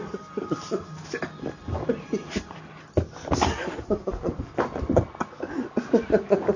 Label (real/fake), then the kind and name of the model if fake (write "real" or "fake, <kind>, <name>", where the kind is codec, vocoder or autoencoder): real